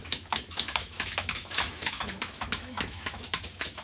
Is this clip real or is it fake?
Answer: fake